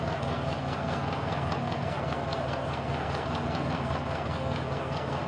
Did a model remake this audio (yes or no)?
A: yes